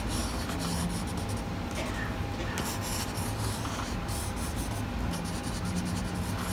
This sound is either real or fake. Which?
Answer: real